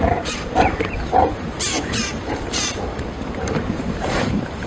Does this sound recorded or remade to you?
remade